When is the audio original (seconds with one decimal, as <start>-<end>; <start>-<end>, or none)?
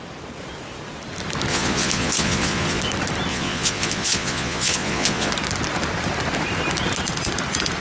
0.0-1.5; 2.8-3.3; 5.3-7.8